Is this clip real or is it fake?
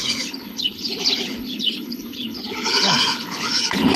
fake